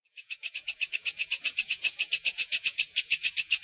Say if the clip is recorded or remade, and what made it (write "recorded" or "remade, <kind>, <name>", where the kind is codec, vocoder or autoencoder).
remade, vocoder, Vocos